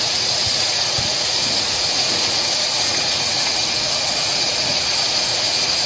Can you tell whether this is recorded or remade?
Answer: remade